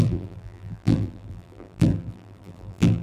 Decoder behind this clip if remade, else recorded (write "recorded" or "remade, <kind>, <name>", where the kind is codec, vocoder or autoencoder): remade, vocoder, BigVGAN v2